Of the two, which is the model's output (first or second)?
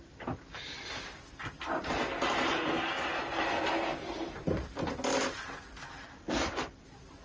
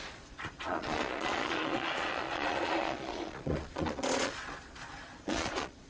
second